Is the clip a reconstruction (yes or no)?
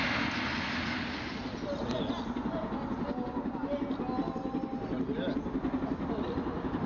no